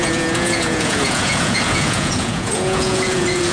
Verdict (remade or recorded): remade